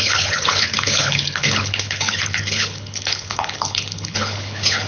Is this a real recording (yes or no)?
no